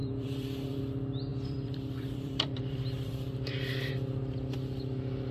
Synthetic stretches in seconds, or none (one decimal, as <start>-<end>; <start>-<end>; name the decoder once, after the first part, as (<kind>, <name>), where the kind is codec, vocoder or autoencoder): 0.0-0.8 (vocoder, BigVGAN v2); 1.3-3.9